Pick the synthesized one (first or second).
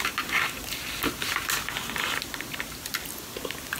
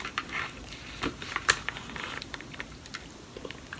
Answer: second